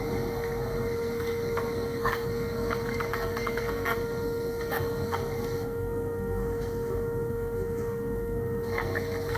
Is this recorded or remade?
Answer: remade